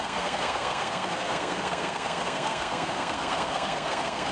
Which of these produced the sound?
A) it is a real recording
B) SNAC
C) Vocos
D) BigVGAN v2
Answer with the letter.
B